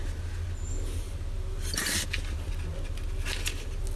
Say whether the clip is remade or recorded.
recorded